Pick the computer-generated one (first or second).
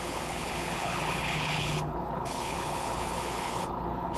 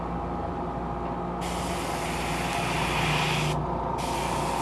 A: first